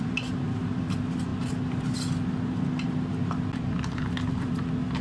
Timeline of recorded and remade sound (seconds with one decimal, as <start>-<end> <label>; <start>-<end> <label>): 0.0-1.3 remade; 1.3-4.3 recorded; 4.3-5.0 remade